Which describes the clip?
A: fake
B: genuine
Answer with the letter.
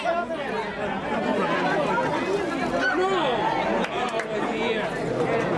B